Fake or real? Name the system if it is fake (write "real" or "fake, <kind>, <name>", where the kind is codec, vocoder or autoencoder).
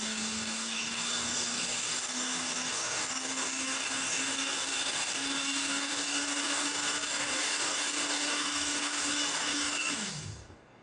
fake, codec, DAC